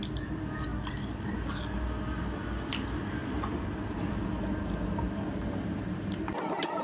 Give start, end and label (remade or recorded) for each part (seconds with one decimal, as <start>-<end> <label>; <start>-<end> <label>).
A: 0.0-5.4 recorded; 5.4-6.8 remade